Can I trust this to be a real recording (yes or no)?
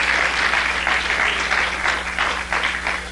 yes